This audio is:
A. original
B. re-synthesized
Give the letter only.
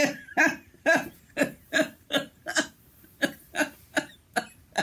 B